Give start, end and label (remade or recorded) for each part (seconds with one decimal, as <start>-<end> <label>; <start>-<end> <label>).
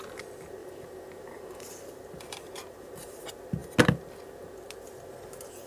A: 0.0-0.6 recorded; 0.6-3.2 remade; 3.2-5.7 recorded